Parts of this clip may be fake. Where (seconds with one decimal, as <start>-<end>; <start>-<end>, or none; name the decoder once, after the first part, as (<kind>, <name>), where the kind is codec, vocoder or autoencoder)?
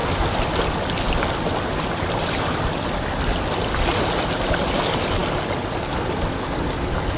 none